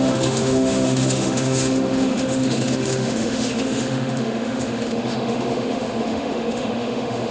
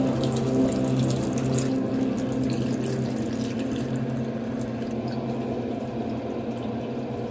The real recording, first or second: second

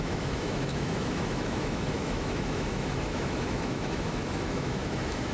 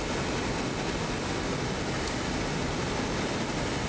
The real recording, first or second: second